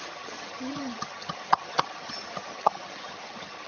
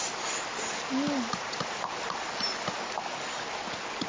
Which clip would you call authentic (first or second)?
second